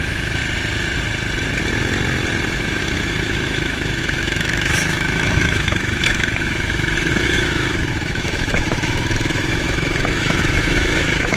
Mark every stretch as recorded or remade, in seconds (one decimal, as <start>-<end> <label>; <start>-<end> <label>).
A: 0.0-0.4 remade; 0.4-2.5 recorded; 2.5-11.4 remade